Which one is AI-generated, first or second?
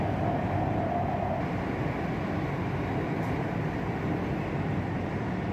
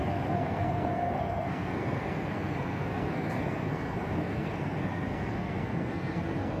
second